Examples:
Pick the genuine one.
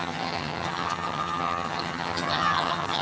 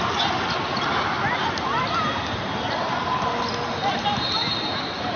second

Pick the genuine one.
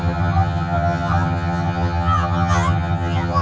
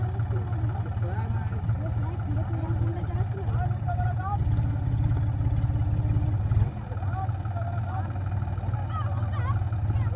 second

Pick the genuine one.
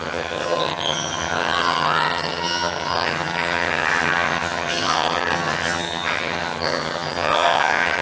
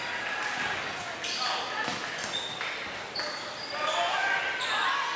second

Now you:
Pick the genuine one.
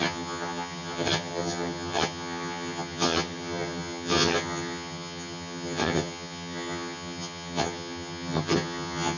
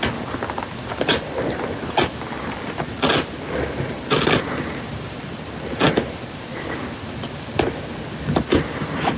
second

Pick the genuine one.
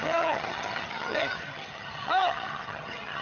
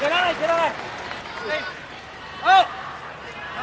second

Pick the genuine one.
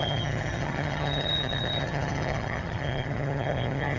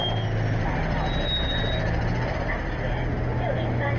second